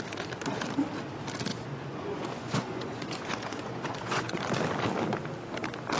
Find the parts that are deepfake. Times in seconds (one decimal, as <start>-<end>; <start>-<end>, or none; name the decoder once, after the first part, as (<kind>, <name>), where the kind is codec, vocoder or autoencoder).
1.5-4.4 (vocoder, Vocos)